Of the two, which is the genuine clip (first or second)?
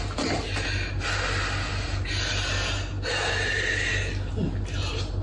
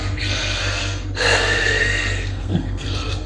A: first